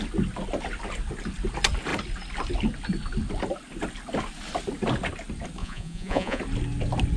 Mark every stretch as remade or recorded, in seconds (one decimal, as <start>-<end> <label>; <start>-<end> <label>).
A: 0.0-5.6 recorded; 5.6-6.4 remade; 6.4-7.2 recorded

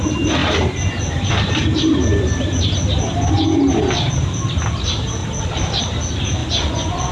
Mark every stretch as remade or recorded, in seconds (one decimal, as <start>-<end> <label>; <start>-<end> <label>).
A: 0.0-6.4 recorded; 6.4-7.1 remade

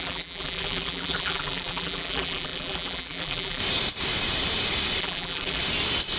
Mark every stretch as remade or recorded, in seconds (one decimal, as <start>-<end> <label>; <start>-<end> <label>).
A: 0.0-3.6 remade; 3.6-5.0 recorded; 5.0-5.6 remade; 5.6-6.2 recorded